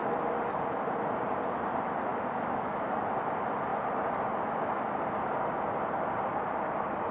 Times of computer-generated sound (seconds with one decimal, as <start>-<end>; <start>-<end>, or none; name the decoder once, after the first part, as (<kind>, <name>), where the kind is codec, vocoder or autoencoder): 2.1-3.1 (autoencoder, DAC-VAE)